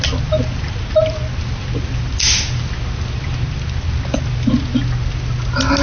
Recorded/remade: recorded